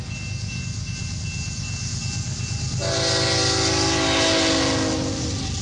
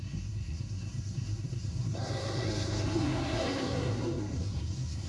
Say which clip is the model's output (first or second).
second